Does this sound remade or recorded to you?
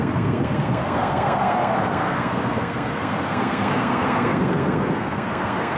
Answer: remade